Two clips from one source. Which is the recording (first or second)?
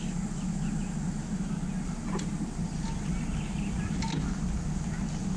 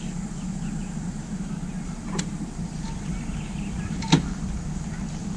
first